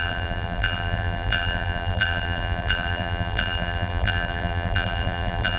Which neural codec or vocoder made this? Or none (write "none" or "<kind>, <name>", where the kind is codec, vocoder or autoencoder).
vocoder, BigVGAN v2